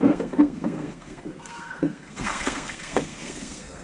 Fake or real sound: fake